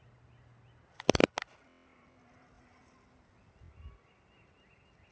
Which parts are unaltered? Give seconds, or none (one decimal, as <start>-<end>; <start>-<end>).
0.0-5.1

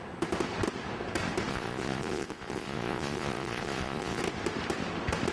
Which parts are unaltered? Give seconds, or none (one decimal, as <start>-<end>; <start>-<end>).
0.0-1.5; 4.2-5.3

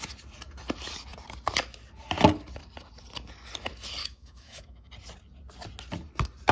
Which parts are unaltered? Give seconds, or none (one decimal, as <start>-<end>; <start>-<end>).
0.0-4.0; 4.9-6.5

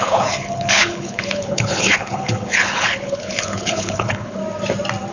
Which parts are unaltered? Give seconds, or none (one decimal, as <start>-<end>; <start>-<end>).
4.4-5.1

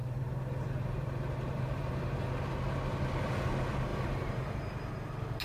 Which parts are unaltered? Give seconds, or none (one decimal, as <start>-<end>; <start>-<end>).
2.3-3.9; 4.7-5.4

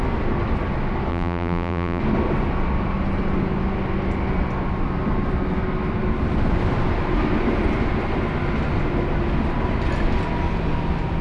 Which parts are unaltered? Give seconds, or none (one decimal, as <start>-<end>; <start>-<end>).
0.0-1.1; 2.0-11.2

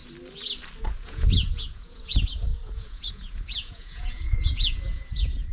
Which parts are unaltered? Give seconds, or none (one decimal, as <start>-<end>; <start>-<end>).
0.0-0.8